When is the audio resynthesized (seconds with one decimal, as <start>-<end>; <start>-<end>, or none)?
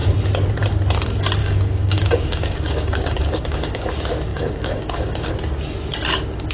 1.4-3.9; 4.3-5.3